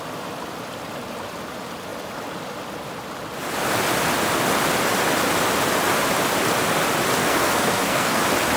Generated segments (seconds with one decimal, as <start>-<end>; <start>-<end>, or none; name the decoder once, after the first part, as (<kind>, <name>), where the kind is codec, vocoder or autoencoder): 7.2-8.2 (codec, SNAC)